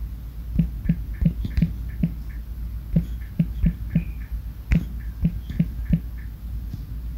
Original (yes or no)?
yes